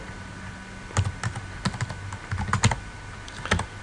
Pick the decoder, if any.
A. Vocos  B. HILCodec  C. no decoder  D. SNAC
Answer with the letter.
C